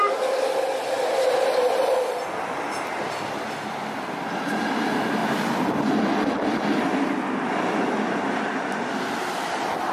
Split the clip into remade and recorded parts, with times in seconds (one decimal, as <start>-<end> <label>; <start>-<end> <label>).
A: 0.0-9.9 recorded